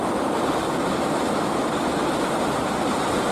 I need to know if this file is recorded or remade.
remade